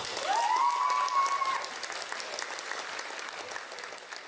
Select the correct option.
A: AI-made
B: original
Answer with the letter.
B